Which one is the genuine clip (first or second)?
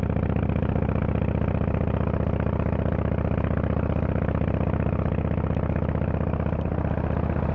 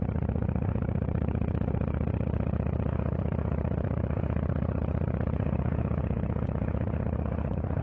first